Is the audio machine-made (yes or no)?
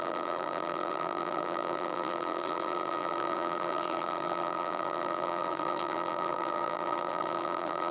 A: yes